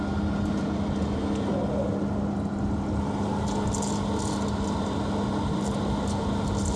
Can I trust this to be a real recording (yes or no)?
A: yes